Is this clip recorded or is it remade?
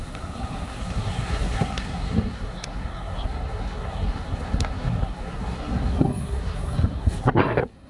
remade